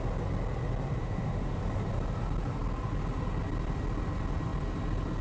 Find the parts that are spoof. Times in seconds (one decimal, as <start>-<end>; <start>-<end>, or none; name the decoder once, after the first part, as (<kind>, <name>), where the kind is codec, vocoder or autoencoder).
1.0-1.6 (autoencoder, DAC-VAE)